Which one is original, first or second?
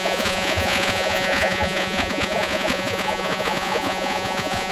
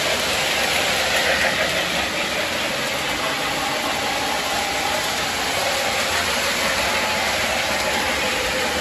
second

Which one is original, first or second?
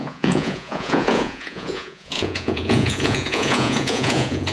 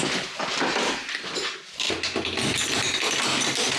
second